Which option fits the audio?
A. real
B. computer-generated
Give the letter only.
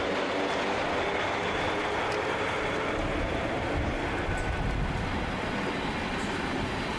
A